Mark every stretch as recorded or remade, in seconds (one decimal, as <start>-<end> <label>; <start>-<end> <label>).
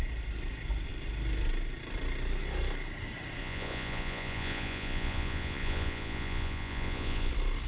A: 0.0-3.4 recorded; 3.4-7.3 remade; 7.3-7.7 recorded